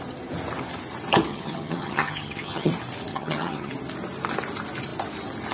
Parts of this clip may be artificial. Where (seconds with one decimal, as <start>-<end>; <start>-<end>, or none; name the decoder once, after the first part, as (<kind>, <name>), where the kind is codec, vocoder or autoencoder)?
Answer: 1.3-2.7 (vocoder, HiFi-GAN); 3.1-3.7